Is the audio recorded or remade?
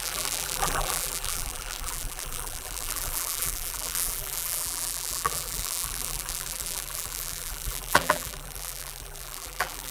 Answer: remade